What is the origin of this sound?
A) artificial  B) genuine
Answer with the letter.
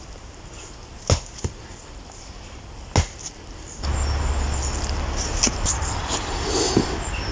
B